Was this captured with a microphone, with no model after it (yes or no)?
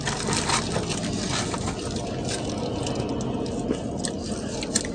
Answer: yes